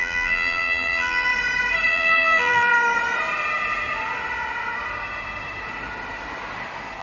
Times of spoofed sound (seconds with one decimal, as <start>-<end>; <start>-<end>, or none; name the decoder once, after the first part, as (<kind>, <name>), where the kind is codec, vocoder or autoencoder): 0.0-1.3 (vocoder, BigVGAN v2); 1.9-2.7